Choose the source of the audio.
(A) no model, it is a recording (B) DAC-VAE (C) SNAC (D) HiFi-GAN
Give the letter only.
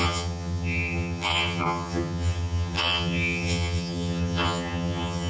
D